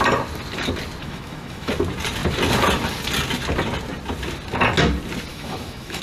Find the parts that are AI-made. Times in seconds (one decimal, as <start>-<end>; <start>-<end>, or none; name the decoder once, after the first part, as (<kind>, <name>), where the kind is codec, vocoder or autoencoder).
1.0-1.7 (autoencoder, DAC-VAE); 5.3-6.0